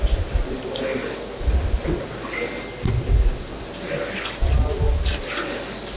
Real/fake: real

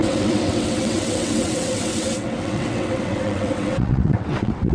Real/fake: fake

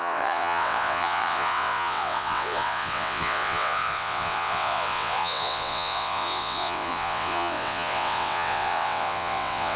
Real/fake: fake